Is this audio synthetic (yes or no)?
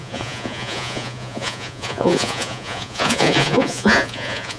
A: yes